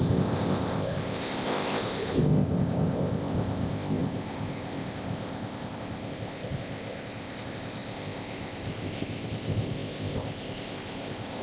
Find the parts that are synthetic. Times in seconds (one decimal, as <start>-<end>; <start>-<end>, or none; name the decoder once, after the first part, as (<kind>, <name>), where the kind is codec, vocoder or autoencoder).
0.0-11.4 (codec, ZipCodec)